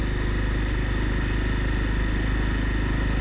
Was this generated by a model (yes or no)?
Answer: no